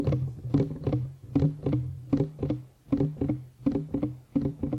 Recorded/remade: recorded